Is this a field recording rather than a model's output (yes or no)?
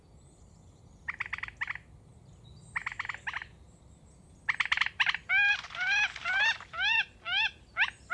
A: yes